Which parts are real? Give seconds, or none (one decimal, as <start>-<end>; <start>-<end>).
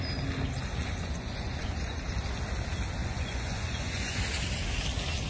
0.0-0.8; 2.0-3.0; 4.2-5.3